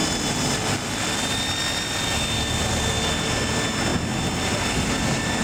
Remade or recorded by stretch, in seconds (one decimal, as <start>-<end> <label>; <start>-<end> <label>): 0.0-5.4 recorded